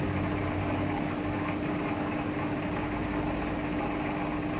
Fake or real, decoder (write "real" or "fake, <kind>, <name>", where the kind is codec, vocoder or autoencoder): fake, vocoder, BigVGAN v2